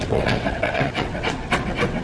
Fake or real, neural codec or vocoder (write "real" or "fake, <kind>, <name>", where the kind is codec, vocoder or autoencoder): fake, vocoder, WaveNeXt